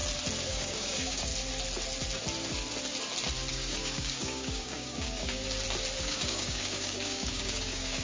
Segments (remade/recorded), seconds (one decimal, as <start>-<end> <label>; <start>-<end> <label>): 0.0-0.5 recorded; 0.5-1.3 remade; 1.3-3.5 recorded; 3.5-5.4 remade; 5.4-6.0 recorded; 6.0-8.0 remade